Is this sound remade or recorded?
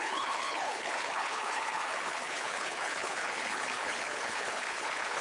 remade